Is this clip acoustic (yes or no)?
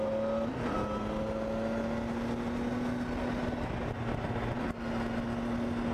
yes